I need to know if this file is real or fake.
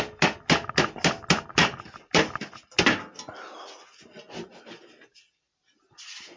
real